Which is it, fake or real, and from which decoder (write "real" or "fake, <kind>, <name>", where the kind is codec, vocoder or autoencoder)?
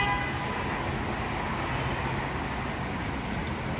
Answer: real